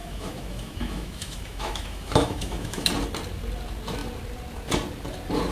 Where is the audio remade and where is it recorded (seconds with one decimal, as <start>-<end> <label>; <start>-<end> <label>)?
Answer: 0.0-2.9 remade; 2.9-5.5 recorded